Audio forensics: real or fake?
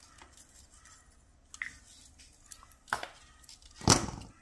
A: real